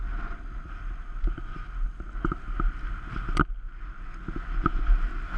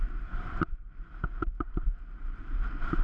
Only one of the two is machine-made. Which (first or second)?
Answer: second